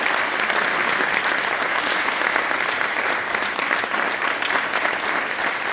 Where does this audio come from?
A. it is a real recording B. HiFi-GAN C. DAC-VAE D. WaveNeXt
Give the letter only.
A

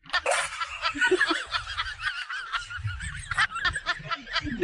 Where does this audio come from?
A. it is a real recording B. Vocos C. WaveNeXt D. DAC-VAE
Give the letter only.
A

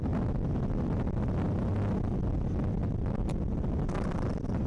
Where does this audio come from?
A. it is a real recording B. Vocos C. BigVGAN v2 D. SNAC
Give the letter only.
A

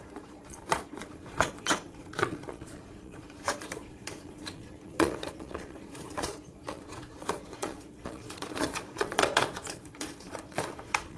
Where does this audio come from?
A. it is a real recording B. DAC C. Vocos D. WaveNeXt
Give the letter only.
C